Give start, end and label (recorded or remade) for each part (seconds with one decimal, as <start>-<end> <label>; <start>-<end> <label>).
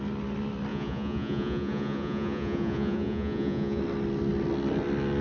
0.0-0.7 recorded; 0.7-3.8 remade; 3.8-5.2 recorded